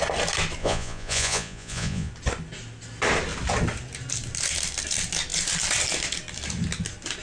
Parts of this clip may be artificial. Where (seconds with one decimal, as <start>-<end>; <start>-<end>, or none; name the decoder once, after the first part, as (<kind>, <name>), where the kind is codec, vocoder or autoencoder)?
0.6-2.1 (vocoder, Vocos)